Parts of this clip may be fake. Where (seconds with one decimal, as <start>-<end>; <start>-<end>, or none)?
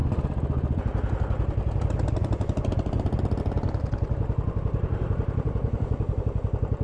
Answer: none